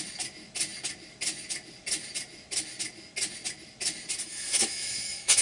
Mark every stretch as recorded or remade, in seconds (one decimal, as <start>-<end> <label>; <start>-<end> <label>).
0.0-4.3 recorded; 4.3-5.4 remade

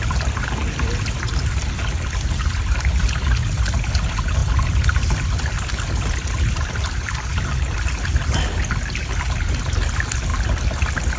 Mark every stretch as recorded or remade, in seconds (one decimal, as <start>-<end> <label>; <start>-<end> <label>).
0.0-11.2 recorded

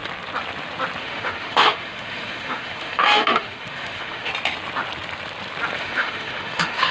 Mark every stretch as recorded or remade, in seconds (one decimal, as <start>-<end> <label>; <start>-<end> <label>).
0.0-1.0 recorded; 1.0-4.3 remade; 4.3-5.8 recorded; 5.8-6.9 remade

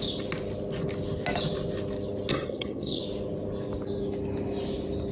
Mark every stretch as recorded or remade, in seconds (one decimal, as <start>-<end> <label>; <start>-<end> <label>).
0.0-2.3 recorded; 2.3-3.0 remade; 3.0-5.1 recorded